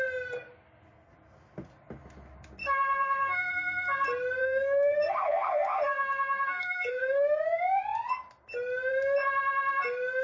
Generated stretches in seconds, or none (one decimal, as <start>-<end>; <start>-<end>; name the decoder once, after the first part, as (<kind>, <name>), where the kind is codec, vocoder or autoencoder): 2.6-3.5 (codec, SNAC); 4.4-7.4